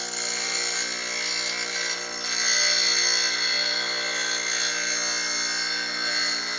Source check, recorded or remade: recorded